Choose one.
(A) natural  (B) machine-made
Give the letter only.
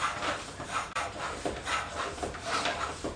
B